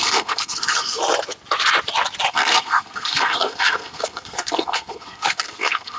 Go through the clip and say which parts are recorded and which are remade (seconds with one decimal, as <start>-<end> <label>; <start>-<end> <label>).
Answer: 0.0-1.0 remade; 1.0-2.3 recorded; 2.3-6.0 remade